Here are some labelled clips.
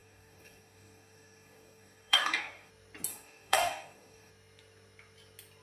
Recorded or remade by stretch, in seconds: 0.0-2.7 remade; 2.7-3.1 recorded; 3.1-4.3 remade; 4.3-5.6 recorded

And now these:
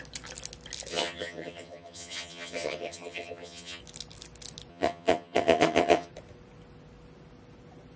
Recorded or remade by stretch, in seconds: 0.0-0.9 recorded; 0.9-3.8 remade; 3.8-4.7 recorded; 4.7-6.1 remade; 6.1-8.0 recorded

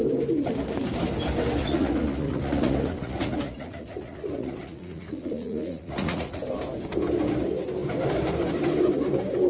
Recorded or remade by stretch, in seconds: 0.0-1.6 recorded; 1.6-6.4 remade; 6.4-9.5 recorded

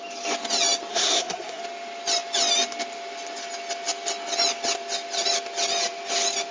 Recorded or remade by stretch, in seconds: 0.0-0.9 recorded; 0.9-1.6 remade; 1.6-6.5 recorded

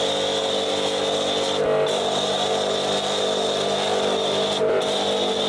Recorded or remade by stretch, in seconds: 0.0-5.5 recorded

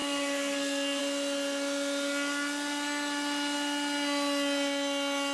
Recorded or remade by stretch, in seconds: 0.0-1.0 remade; 1.0-5.3 recorded

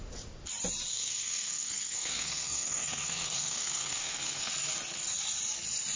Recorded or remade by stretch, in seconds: 0.0-0.9 recorded; 0.9-4.5 remade; 4.5-6.0 recorded